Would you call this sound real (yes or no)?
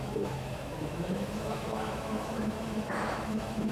no